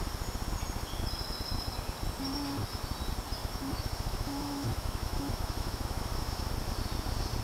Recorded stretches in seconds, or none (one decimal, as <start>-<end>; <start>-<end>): 0.0-3.4; 6.5-7.4

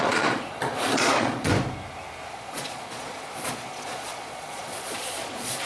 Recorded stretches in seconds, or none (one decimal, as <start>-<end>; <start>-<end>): 1.5-2.3

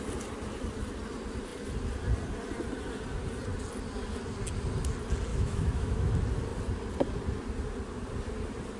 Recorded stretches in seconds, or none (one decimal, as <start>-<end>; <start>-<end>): 0.0-5.3; 6.1-8.8